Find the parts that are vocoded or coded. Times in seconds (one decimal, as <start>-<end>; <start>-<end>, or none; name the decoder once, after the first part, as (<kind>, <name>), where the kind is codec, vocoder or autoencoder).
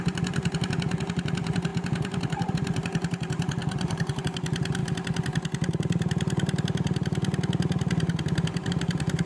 0.0-4.8 (vocoder, BigVGAN v2); 8.7-9.3